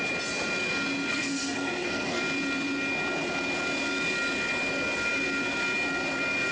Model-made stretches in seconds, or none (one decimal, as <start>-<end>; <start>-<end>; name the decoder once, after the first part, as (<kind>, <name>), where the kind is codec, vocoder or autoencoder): 1.1-2.2 (codec, SNAC)